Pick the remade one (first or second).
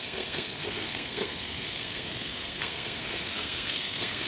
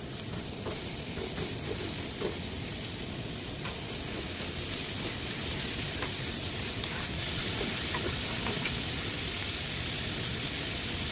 first